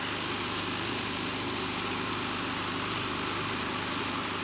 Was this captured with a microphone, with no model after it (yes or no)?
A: yes